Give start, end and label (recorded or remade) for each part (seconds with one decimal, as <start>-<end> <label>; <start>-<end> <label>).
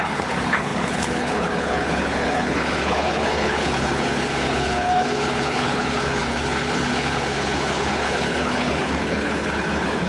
0.0-10.1 remade